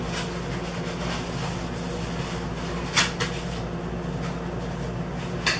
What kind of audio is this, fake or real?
real